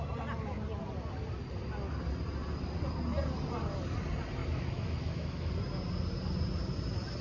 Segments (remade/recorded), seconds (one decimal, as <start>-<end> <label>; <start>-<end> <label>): 0.0-4.4 recorded; 4.4-5.5 remade; 5.5-7.2 recorded